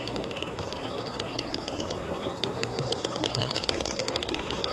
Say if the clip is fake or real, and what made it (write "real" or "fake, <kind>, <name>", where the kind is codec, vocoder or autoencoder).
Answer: fake, codec, SNAC